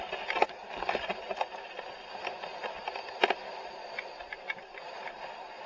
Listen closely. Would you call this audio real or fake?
real